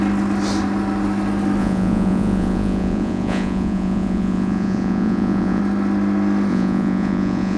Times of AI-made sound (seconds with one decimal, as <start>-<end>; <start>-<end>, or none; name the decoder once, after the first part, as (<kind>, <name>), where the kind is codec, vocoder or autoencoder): 1.6-5.6 (vocoder, Vocos); 6.5-7.6